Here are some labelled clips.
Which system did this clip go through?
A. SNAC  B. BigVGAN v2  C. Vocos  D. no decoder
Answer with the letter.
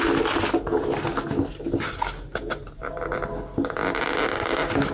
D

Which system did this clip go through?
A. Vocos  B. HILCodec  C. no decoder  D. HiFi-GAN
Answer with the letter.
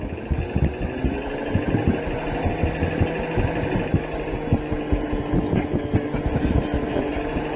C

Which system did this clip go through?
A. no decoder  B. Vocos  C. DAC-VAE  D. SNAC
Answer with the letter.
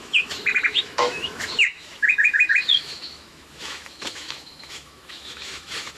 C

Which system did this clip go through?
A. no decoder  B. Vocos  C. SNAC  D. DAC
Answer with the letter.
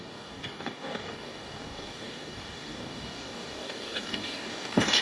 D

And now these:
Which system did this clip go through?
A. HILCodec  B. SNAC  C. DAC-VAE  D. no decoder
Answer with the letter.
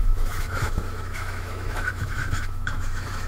C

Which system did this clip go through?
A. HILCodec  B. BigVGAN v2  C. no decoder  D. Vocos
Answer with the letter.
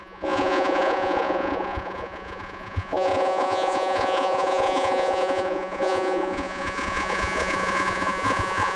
D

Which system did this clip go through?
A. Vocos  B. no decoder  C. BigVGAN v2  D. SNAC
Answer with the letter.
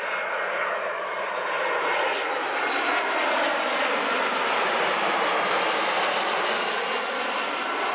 B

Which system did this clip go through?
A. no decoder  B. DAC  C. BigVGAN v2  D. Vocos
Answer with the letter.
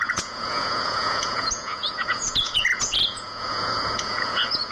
D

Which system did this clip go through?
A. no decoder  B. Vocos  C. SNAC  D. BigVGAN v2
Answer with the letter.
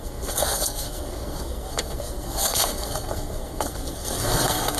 C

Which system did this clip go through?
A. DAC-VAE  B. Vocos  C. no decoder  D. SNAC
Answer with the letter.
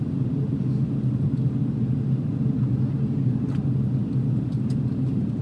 C